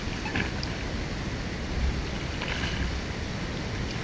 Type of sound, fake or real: real